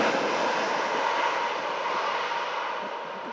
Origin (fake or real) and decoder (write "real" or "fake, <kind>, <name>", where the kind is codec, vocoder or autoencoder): real